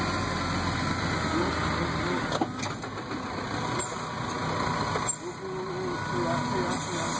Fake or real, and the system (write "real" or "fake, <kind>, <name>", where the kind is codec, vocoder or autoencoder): real